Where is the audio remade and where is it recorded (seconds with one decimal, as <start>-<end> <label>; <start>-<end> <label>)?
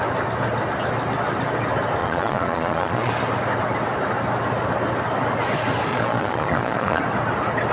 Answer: 0.0-2.0 recorded; 2.0-3.1 remade; 3.1-5.9 recorded; 5.9-7.0 remade; 7.0-7.7 recorded